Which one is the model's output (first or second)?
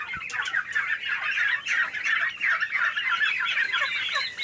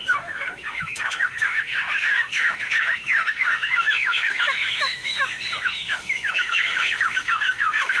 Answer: second